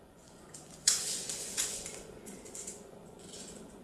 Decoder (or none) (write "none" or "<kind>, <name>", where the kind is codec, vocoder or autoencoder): vocoder, Vocos